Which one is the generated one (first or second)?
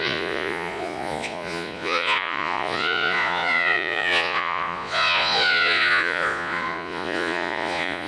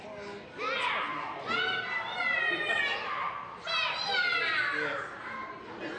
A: first